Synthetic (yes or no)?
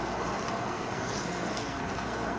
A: yes